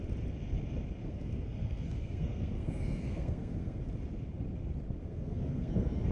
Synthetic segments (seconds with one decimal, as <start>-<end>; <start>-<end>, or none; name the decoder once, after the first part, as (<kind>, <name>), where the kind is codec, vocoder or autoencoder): 1.0-3.8 (codec, SNAC); 5.0-6.1